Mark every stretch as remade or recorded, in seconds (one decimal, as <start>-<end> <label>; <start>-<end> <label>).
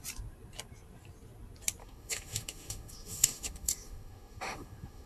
0.0-1.8 recorded; 1.8-5.1 remade